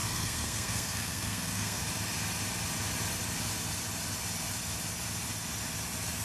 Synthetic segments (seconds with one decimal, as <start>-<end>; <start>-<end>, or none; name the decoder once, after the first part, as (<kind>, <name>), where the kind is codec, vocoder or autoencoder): 0.0-1.8 (codec, SNAC)